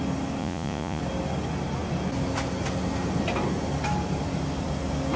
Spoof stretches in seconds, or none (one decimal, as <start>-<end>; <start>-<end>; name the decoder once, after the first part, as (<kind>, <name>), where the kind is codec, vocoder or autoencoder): 0.4-1.0 (vocoder, Vocos)